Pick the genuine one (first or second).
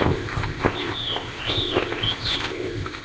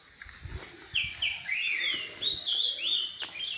second